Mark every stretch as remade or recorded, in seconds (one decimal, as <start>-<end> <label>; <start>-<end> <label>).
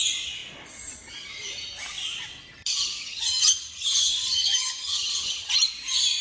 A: 0.0-2.6 recorded; 2.6-5.5 remade; 5.5-6.2 recorded